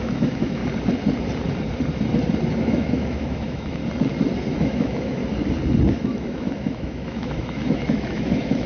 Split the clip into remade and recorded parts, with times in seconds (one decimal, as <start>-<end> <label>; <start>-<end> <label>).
0.0-0.6 remade; 0.6-2.6 recorded; 2.6-3.8 remade; 3.8-4.6 recorded; 4.6-5.2 remade; 5.2-5.9 recorded; 5.9-8.7 remade